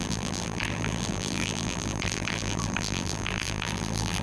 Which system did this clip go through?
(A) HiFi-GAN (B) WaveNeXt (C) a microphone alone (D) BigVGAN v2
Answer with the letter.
D